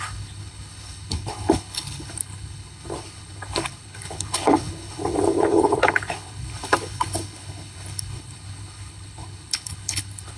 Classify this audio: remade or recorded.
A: remade